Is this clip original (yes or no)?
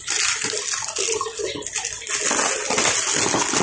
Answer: yes